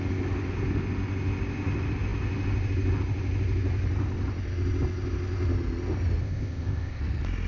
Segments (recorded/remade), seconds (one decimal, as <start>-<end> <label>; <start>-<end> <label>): 0.0-6.2 recorded; 6.2-7.0 remade; 7.0-7.5 recorded

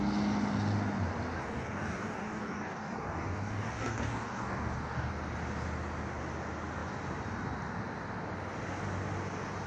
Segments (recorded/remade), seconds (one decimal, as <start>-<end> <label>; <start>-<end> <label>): 0.0-1.4 recorded; 1.4-5.1 remade; 5.1-9.7 recorded

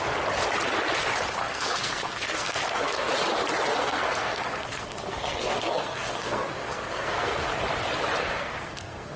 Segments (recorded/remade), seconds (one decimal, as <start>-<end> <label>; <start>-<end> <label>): 0.0-1.4 recorded; 1.4-3.1 remade; 3.1-3.7 recorded; 3.7-7.5 remade; 7.5-8.2 recorded; 8.2-9.2 remade

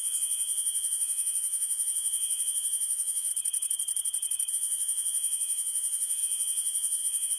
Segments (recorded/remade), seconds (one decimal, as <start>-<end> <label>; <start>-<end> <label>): 0.0-3.3 remade; 3.3-4.5 recorded; 4.5-7.4 remade

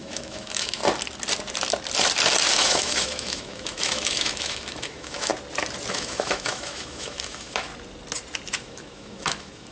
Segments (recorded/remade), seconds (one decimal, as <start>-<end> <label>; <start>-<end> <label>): 0.0-0.8 remade; 0.8-2.5 recorded; 2.5-5.3 remade; 5.3-5.9 recorded; 5.9-7.7 remade; 7.7-8.6 recorded; 8.6-9.7 remade

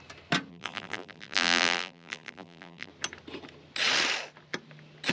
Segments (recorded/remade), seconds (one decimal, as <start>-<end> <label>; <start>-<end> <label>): 0.0-0.5 recorded; 0.5-2.9 remade; 2.9-5.1 recorded

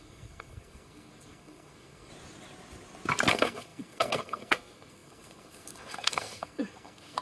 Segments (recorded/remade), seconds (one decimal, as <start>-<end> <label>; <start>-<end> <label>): 0.0-2.1 remade; 2.1-3.3 recorded; 3.3-7.2 remade